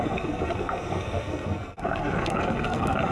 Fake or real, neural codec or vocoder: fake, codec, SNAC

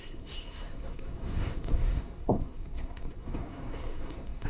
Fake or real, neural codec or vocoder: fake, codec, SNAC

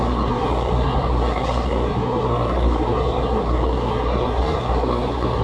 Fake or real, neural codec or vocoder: fake, codec, SNAC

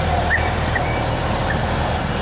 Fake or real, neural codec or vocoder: real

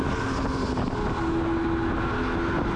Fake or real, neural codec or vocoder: real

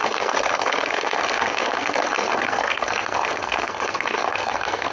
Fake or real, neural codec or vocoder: fake, codec, SNAC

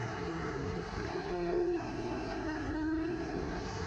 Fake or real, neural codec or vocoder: fake, codec, SNAC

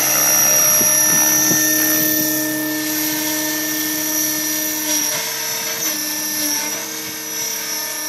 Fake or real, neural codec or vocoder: real